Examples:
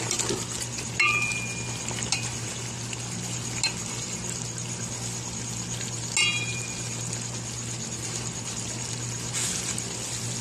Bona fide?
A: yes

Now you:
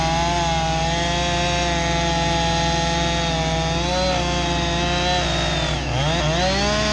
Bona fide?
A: yes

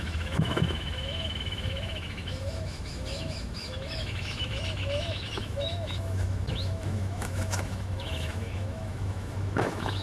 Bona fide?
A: no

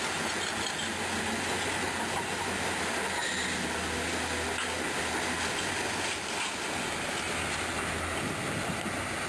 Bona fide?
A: yes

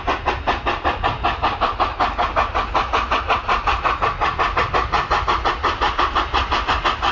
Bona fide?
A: yes